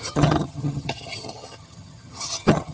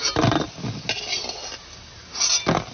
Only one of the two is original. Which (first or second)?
second